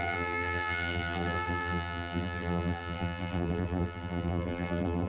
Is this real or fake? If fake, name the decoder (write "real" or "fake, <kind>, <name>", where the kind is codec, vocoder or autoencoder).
fake, vocoder, BigVGAN v2